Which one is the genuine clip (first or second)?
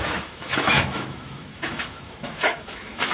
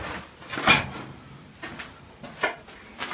second